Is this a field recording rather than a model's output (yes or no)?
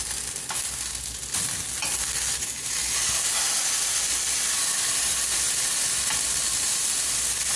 yes